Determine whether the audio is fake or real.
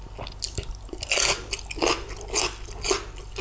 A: real